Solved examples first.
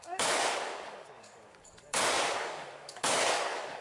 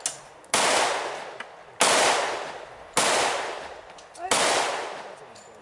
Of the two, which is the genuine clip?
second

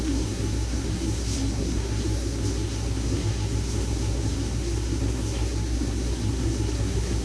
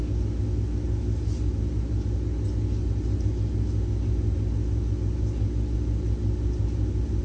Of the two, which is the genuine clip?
second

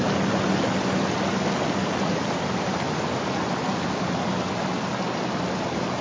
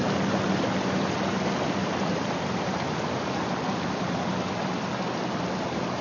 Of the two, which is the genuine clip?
first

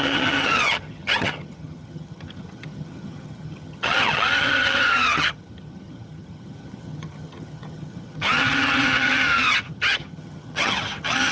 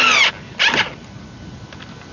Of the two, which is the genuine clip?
second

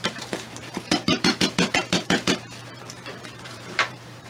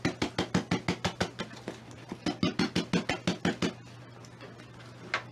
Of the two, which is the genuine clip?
second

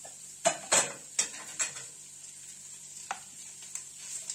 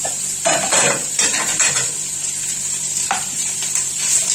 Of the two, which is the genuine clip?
first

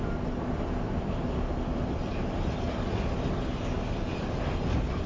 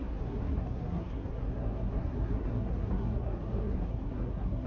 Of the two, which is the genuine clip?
first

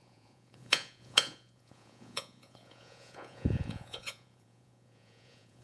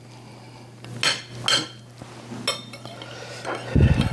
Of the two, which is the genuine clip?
second